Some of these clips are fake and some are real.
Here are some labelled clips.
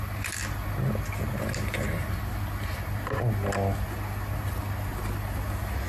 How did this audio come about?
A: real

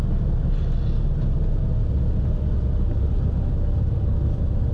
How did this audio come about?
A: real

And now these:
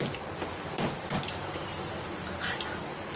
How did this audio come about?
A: real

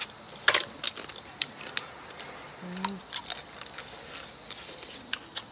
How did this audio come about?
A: real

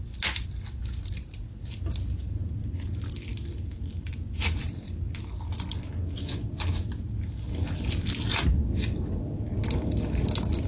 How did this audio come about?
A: real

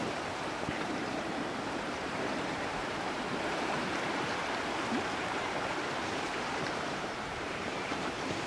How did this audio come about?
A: fake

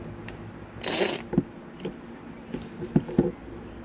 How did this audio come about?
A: real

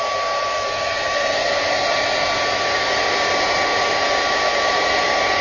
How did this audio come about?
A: real